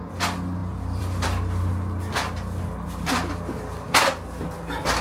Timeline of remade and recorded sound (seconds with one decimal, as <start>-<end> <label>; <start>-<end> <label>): 0.0-0.6 recorded; 0.6-3.6 remade; 3.6-5.0 recorded